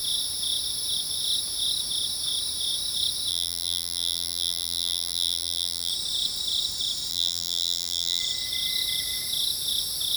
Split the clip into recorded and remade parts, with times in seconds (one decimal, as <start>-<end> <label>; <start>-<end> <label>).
0.0-3.3 recorded; 3.3-5.9 remade; 5.9-7.1 recorded; 7.1-8.2 remade; 8.2-10.2 recorded